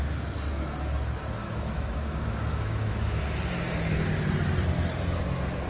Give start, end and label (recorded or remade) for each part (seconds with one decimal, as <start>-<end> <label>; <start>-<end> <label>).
0.0-1.4 recorded; 1.4-3.2 remade; 3.2-5.7 recorded